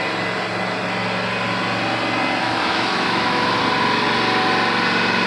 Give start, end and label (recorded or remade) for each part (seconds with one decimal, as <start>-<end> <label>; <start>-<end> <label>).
0.0-2.4 recorded; 2.4-3.6 remade; 3.6-5.3 recorded